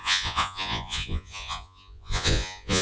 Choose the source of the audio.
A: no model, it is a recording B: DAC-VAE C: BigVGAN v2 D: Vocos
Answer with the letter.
D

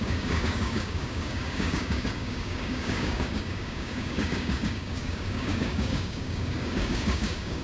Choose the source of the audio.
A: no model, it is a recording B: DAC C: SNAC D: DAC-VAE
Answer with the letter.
B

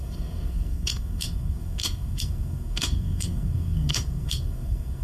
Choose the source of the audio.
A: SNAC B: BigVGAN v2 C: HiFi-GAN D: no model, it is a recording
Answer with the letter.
A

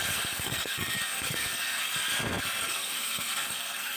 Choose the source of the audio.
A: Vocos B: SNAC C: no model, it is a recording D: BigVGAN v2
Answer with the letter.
B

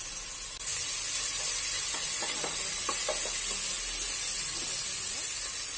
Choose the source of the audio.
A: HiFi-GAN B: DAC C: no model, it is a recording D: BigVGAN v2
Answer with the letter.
C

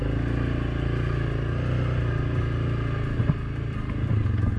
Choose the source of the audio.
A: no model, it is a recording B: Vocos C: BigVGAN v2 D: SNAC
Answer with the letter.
A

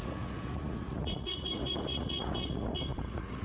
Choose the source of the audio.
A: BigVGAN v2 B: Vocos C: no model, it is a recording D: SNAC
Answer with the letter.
B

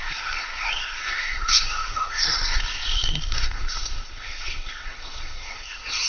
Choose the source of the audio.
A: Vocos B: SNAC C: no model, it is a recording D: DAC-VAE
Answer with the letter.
B